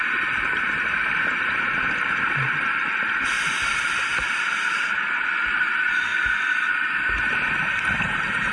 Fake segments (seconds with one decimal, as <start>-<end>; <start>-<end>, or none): 0.0-6.1; 8.0-8.5